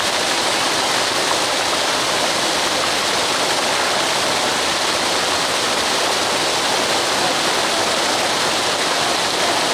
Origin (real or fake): real